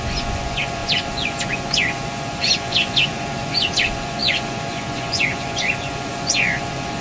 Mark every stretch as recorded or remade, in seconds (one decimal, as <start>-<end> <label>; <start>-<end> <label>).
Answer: 0.0-7.0 remade